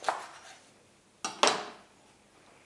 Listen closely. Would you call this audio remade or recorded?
recorded